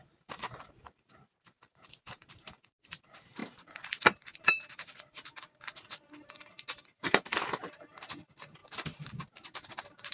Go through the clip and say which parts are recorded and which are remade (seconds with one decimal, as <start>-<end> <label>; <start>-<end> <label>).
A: 0.0-8.6 remade; 8.6-9.1 recorded; 9.1-10.1 remade